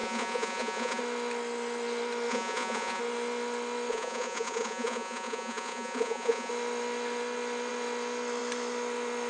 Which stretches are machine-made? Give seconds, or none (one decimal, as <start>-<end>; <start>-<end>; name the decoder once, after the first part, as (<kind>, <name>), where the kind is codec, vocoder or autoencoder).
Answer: 0.0-1.0 (vocoder, Vocos); 2.3-3.0; 3.9-6.5